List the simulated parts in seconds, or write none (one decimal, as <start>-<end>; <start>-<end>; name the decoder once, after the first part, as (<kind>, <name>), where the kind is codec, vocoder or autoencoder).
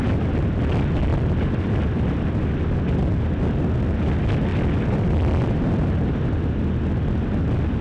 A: 1.1-2.5 (vocoder, BigVGAN v2); 4.5-6.8